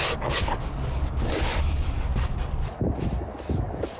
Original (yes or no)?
no